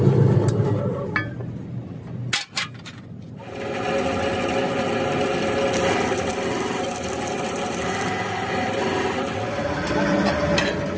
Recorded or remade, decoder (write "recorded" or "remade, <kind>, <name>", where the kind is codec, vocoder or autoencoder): recorded